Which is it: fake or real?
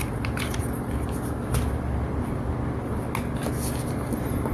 real